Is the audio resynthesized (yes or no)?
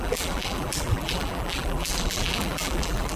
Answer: yes